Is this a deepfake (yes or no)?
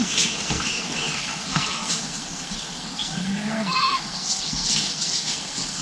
yes